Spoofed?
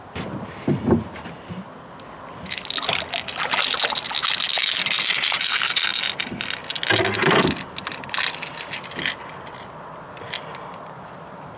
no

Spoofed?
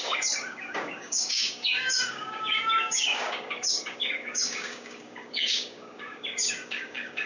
yes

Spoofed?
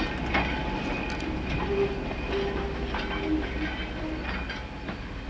no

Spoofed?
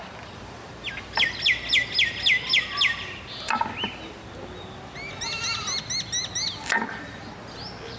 no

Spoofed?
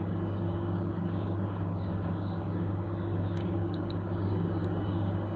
yes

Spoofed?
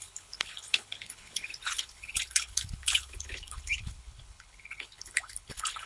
yes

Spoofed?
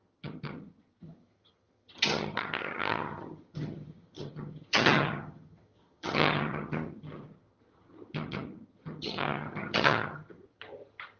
yes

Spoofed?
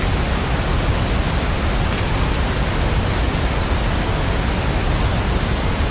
no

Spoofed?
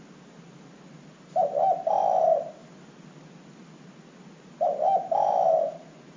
no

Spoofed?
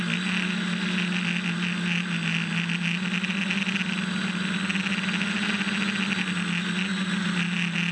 no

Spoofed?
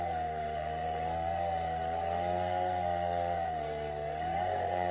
yes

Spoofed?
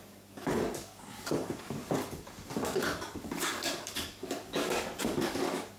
yes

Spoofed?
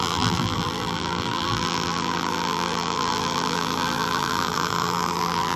yes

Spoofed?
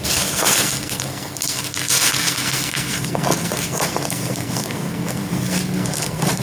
yes